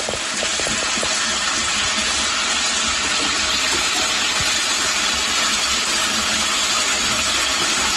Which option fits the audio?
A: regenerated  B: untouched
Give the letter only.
A